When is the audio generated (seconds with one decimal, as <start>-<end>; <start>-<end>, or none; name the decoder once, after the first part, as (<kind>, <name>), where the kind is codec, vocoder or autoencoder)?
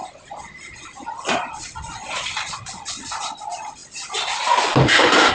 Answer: none